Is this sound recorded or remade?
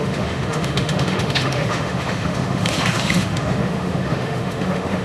remade